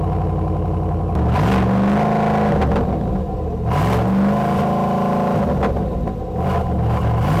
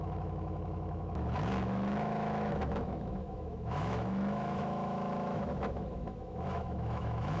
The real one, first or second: first